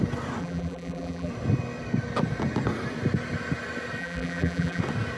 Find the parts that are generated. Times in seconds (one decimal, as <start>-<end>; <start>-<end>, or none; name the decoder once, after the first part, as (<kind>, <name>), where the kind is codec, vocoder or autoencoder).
0.4-1.3 (vocoder, BigVGAN v2); 4.0-4.8

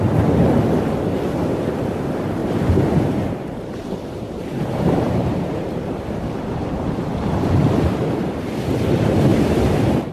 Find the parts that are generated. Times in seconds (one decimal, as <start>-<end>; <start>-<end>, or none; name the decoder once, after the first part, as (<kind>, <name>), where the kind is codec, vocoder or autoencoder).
2.4-7.0 (vocoder, BigVGAN v2); 9.3-10.1